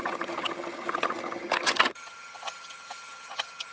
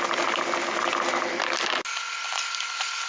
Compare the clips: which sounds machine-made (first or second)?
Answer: first